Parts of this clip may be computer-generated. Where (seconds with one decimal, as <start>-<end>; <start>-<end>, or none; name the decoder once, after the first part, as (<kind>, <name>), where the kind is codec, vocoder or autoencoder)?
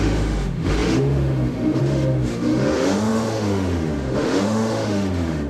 0.0-5.5 (autoencoder, DAC-VAE)